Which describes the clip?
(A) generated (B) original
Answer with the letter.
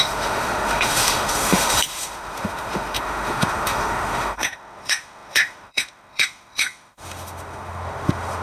A